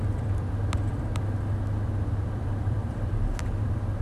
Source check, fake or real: fake